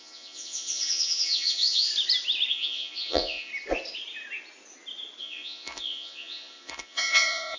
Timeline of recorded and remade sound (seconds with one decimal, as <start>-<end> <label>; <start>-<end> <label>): 0.0-1.9 remade; 1.9-2.5 recorded; 2.5-3.5 remade; 3.5-5.2 recorded; 5.2-7.6 remade